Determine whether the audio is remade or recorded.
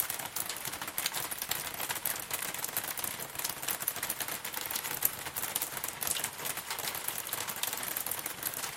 recorded